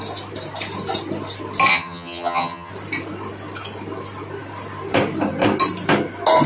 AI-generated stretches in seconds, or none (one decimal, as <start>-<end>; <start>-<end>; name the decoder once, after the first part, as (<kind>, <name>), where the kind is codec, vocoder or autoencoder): 1.7-2.7 (vocoder, HiFi-GAN)